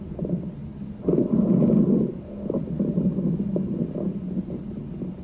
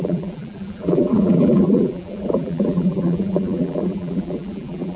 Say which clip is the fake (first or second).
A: second